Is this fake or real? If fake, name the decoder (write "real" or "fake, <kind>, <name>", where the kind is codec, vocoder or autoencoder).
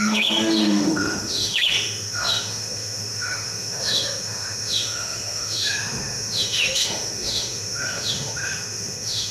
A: fake, autoencoder, DAC-VAE